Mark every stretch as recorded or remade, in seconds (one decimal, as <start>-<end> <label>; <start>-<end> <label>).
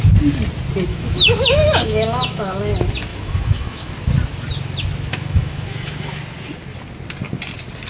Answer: 0.0-0.9 recorded; 0.9-2.6 remade; 2.6-3.1 recorded; 3.1-3.9 remade; 3.9-5.1 recorded; 5.1-6.2 remade; 6.2-7.9 recorded